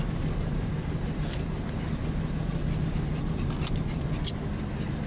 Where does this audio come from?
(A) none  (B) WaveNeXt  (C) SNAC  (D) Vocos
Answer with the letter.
A